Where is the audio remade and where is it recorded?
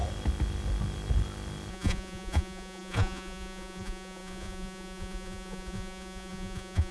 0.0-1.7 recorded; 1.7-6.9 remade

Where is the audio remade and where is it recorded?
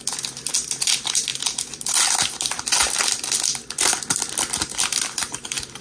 0.0-5.8 recorded